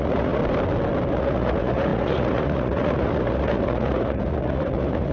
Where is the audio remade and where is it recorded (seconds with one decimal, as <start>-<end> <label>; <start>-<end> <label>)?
0.0-0.4 remade; 0.4-1.1 recorded; 1.1-5.1 remade